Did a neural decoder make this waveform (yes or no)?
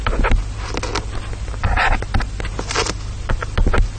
no